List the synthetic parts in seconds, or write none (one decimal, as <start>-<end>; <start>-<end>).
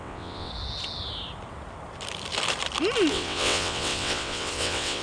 0.0-0.5; 3.1-5.0